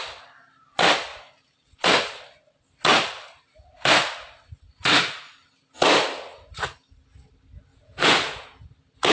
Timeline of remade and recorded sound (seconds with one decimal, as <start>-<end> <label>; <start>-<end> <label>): 0.0-7.7 recorded; 7.7-8.6 remade; 8.6-9.1 recorded